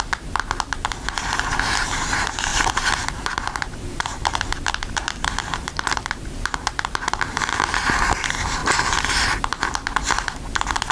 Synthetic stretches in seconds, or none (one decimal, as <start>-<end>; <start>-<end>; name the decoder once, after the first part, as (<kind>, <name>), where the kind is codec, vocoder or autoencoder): 2.5-7.7 (vocoder, BigVGAN v2); 8.6-9.4